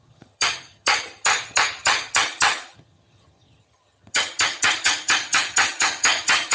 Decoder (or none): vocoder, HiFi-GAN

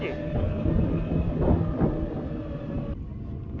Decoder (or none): none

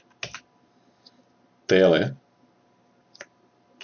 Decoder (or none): none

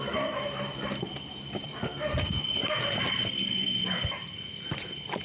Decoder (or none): vocoder, BigVGAN v2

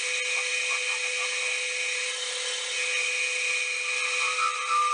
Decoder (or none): none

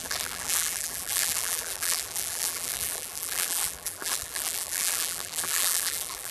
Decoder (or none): vocoder, BigVGAN v2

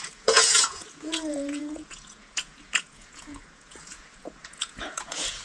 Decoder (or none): vocoder, Vocos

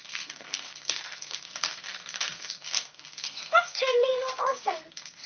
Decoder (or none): codec, SNAC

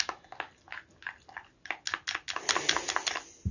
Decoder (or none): none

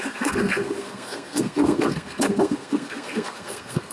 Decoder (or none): codec, SNAC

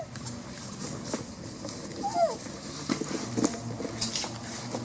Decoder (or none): none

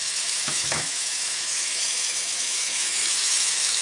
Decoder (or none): autoencoder, DAC-VAE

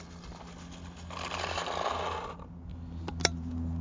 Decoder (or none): none